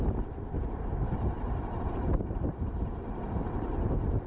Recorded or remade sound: remade